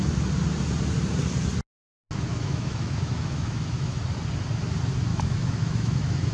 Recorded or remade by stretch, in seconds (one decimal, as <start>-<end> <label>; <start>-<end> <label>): 0.0-2.3 recorded; 2.3-4.0 remade; 4.0-5.1 recorded; 5.1-6.3 remade